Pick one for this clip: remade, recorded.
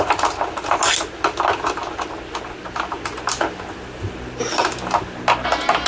recorded